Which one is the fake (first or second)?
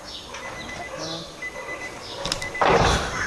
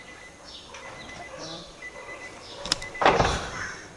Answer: second